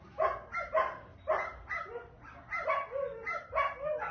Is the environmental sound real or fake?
real